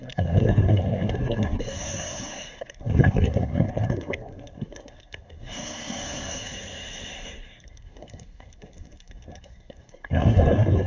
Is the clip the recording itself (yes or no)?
no